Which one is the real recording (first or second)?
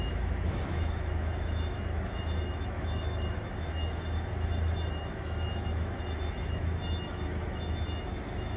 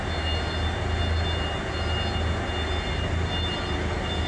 second